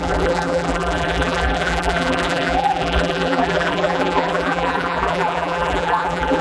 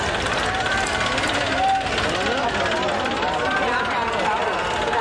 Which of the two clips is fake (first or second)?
first